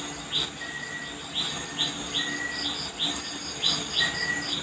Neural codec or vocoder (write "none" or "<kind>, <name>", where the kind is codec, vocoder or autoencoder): none